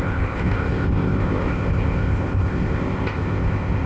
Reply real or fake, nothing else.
fake